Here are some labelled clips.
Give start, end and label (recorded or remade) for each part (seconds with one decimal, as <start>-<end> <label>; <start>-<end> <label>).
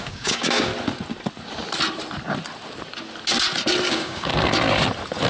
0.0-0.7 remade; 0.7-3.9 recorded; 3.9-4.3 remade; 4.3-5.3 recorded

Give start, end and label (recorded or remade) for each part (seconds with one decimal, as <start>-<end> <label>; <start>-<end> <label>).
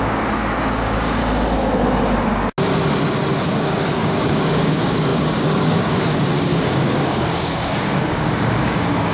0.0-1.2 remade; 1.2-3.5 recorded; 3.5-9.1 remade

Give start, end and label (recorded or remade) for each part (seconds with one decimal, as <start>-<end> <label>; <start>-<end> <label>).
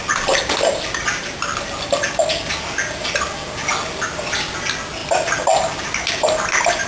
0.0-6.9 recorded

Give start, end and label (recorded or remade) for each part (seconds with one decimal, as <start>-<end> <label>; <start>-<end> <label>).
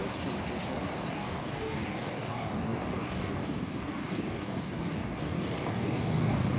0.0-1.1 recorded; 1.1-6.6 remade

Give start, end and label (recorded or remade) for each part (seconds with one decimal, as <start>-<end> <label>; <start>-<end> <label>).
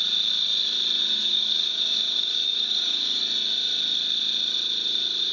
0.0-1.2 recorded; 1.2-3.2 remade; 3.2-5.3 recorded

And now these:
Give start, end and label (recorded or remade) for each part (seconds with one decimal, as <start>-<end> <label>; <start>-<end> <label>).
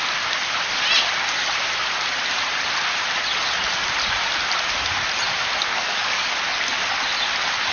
0.0-5.7 recorded; 5.7-6.3 remade; 6.3-7.7 recorded